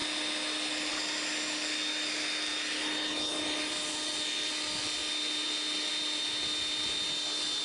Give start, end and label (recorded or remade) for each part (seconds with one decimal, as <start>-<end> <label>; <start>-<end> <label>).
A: 0.0-7.6 recorded